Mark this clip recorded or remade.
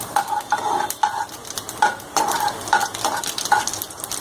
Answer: recorded